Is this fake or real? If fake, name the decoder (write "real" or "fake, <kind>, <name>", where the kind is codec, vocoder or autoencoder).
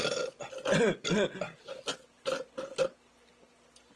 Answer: real